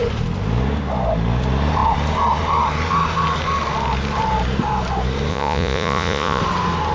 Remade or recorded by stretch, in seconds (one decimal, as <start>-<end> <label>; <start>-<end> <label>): 0.0-5.3 recorded; 5.3-6.4 remade; 6.4-6.9 recorded